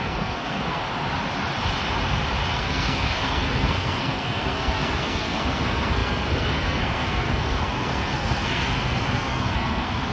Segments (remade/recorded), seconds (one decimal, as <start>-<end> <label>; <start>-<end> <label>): 0.0-0.8 remade; 0.8-2.5 recorded; 2.5-10.1 remade